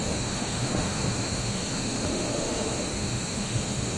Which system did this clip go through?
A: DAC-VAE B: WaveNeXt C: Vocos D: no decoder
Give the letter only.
A